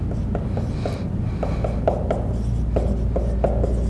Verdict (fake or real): real